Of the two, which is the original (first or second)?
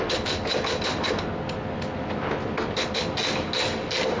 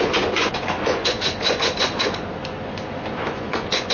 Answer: first